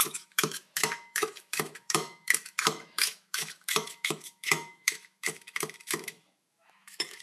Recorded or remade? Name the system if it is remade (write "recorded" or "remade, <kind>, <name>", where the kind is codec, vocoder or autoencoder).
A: remade, autoencoder, DAC-VAE